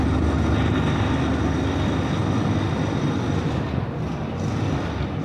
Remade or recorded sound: recorded